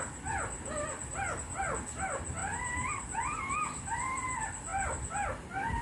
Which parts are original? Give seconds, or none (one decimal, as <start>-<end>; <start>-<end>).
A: 0.0-5.8